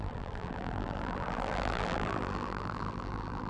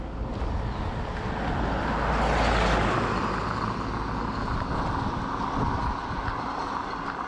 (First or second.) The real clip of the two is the second